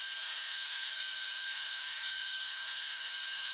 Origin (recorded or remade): remade